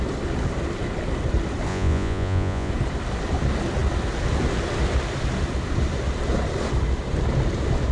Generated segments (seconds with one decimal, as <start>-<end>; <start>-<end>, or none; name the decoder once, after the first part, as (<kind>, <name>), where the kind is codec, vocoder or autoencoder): 1.7-2.7 (vocoder, Vocos)